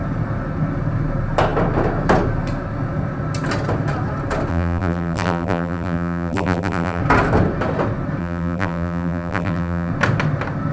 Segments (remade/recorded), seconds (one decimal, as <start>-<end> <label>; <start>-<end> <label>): 0.0-4.5 recorded; 4.5-7.0 remade; 7.0-8.2 recorded; 8.2-9.9 remade; 9.9-10.7 recorded